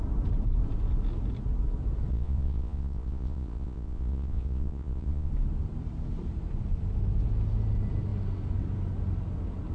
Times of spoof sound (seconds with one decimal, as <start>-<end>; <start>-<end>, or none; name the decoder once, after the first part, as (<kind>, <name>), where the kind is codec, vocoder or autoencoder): 2.1-5.3 (vocoder, Vocos)

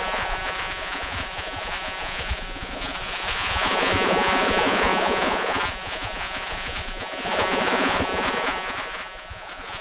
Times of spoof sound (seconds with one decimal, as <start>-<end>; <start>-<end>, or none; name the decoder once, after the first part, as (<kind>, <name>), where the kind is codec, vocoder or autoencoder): 0.0-9.8 (vocoder, Vocos)